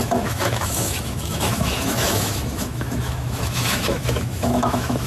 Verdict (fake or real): fake